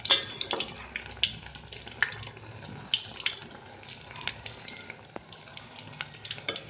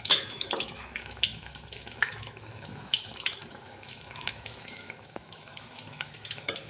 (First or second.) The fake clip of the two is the second